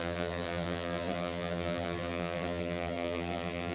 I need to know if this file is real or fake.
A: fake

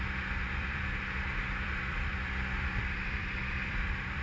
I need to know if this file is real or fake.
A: fake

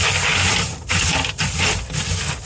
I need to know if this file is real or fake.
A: real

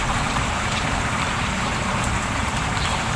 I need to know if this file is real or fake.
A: fake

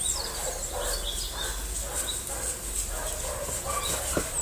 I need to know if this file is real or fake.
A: real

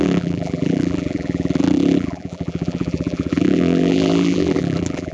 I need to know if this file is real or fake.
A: fake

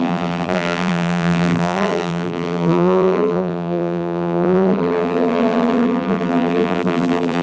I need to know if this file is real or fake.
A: fake